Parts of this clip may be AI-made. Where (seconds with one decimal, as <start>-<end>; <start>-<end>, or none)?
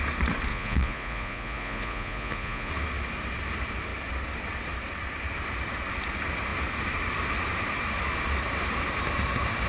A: 0.5-2.7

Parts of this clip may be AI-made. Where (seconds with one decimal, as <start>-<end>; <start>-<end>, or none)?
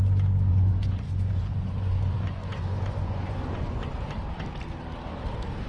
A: 0.5-3.9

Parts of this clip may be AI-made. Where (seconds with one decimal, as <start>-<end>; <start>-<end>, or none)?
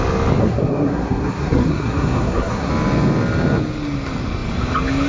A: 0.4-2.7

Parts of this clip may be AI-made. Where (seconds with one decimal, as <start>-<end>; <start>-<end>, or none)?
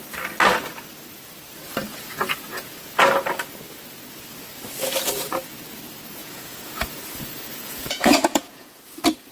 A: 1.9-2.9; 6.2-8.8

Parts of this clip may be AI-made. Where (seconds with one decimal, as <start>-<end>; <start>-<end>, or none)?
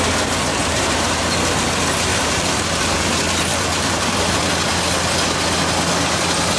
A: 0.5-1.2; 2.1-3.1; 3.5-4.5